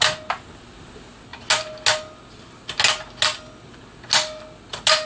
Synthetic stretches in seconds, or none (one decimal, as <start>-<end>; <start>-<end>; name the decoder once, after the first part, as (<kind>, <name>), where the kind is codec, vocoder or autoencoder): none

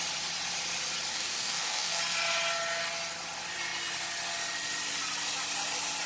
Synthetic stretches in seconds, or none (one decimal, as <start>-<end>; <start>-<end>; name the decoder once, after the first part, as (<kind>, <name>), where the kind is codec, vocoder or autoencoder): 1.1-2.0 (codec, DAC)

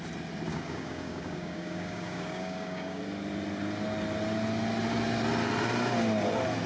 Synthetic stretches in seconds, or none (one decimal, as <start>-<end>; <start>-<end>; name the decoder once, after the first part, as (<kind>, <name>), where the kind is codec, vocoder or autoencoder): 0.5-3.0 (codec, DAC)

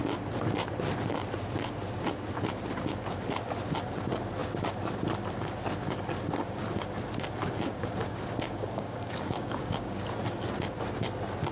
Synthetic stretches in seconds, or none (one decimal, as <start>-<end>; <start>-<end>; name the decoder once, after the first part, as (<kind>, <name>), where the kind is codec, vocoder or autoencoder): 7.4-10.0 (codec, DAC)

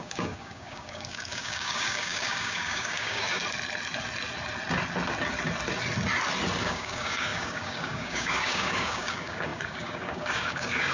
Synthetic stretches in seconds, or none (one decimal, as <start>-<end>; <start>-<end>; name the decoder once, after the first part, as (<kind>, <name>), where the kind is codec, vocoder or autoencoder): 0.0-3.4 (codec, DAC); 6.6-10.9